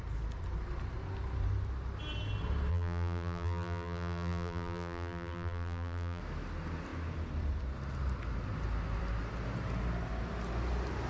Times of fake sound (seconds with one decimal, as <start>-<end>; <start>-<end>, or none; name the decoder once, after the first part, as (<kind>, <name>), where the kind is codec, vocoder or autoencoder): 2.7-6.2 (vocoder, BigVGAN v2)